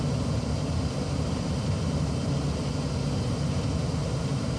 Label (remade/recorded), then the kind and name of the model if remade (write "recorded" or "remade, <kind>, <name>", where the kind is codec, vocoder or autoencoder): recorded